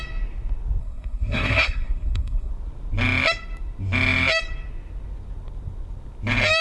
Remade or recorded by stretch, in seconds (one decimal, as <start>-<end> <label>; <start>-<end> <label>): 0.0-0.8 recorded; 0.8-2.5 remade; 2.5-6.6 recorded